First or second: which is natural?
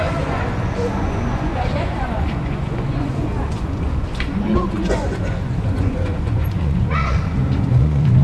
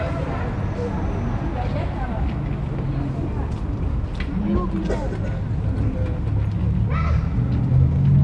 second